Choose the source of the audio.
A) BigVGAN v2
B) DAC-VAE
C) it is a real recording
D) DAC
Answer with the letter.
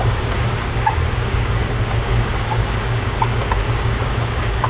D